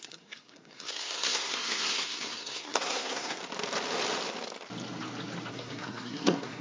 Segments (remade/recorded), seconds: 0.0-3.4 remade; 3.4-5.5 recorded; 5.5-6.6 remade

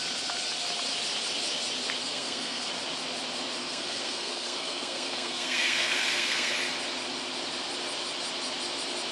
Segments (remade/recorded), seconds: 0.0-2.0 recorded; 2.0-2.7 remade; 2.7-3.6 recorded; 3.6-6.5 remade; 6.5-9.1 recorded

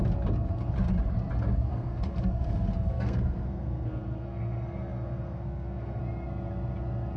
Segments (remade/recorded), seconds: 0.0-1.7 recorded; 1.7-6.0 remade; 6.0-7.2 recorded

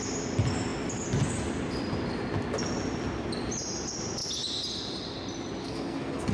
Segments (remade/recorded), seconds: 0.0-5.6 recorded; 5.6-6.3 remade

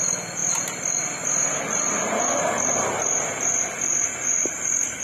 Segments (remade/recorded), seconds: 0.0-5.0 recorded